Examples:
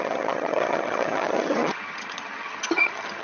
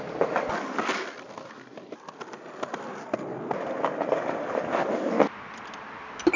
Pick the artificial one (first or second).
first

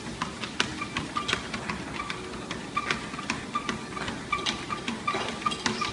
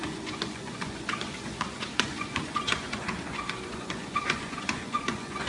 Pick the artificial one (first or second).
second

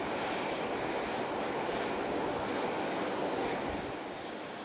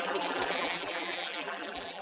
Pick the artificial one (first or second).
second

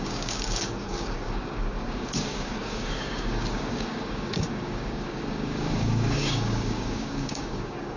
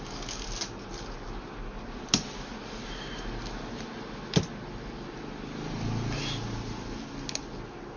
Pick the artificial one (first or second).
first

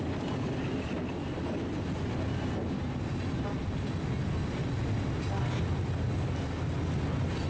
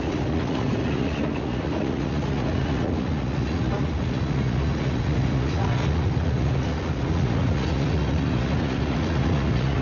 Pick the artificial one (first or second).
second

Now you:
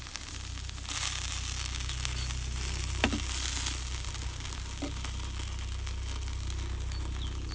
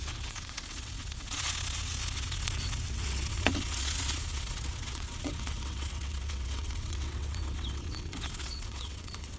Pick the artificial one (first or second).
second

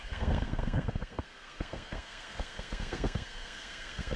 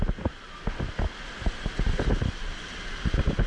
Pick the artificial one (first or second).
first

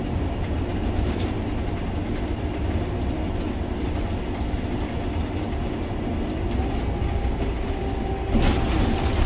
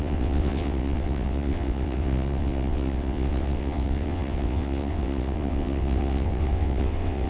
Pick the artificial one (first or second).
second